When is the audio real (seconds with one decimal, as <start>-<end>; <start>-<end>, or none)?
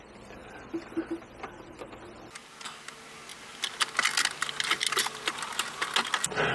0.0-0.4; 1.0-6.5